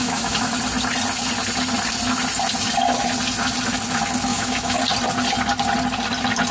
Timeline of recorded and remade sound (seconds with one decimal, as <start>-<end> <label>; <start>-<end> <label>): 0.0-0.5 remade; 0.5-4.3 recorded; 4.3-4.8 remade; 4.8-6.5 recorded